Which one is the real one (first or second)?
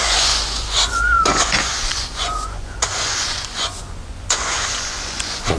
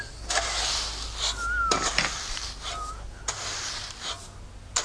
second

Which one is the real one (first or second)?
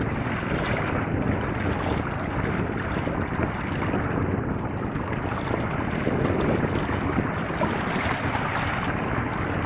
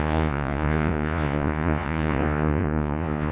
first